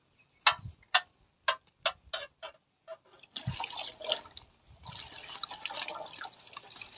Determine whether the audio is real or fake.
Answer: real